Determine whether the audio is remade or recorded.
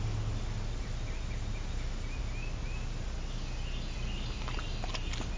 recorded